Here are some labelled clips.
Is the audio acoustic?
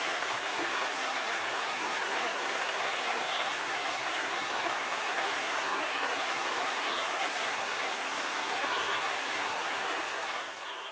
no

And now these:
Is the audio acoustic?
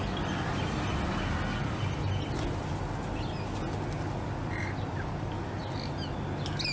yes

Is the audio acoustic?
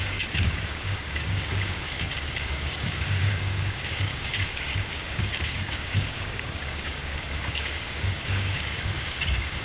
no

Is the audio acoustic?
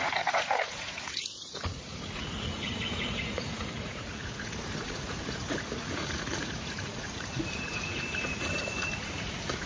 no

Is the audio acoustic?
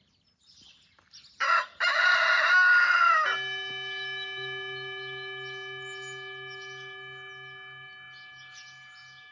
yes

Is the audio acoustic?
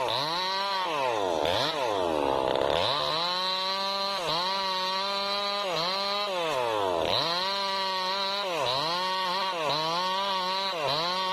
yes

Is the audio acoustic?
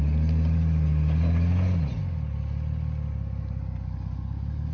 yes